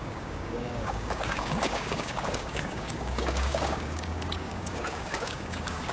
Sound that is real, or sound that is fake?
fake